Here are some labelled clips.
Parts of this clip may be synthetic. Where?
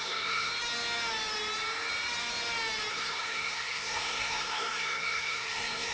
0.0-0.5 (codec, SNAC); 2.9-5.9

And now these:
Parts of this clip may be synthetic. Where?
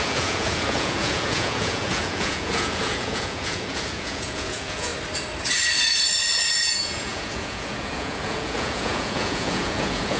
0.0-4.9 (vocoder, Vocos); 6.5-10.2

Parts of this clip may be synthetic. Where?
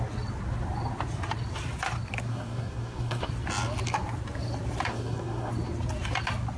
2.3-3.3 (codec, SNAC); 4.9-5.5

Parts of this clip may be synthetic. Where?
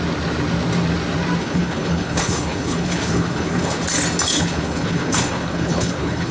1.4-3.8 (codec, HILCodec); 4.3-6.3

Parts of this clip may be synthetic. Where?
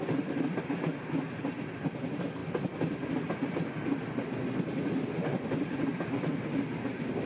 none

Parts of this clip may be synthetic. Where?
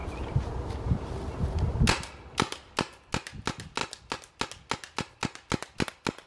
none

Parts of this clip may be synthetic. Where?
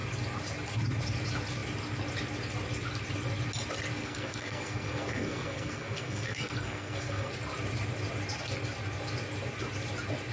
4.0-7.3 (codec, SNAC)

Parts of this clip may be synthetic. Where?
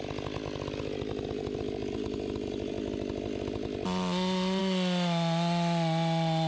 none